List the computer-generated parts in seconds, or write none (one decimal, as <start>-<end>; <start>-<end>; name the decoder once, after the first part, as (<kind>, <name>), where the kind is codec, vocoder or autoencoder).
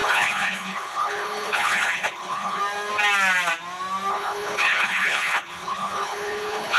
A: 0.0-2.6 (codec, HILCodec); 4.1-6.8